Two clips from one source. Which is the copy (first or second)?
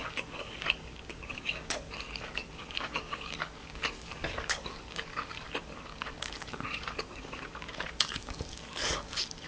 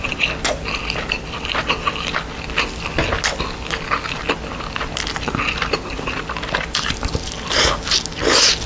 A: first